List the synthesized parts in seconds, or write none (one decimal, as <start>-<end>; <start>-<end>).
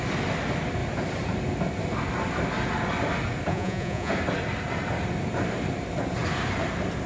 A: 3.5-4.1